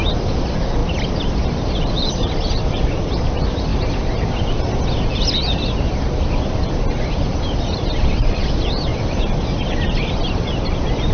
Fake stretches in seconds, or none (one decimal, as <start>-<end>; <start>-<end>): 0.0-3.7; 7.1-8.9; 9.4-11.1